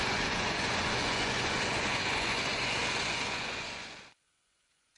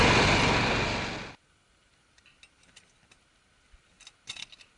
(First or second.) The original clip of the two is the second